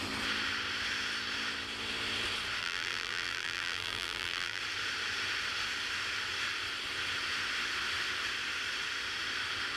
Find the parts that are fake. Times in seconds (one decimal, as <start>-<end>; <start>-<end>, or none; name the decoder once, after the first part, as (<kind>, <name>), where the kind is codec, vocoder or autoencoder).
2.6-4.6 (vocoder, BigVGAN v2)